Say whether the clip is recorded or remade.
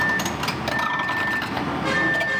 recorded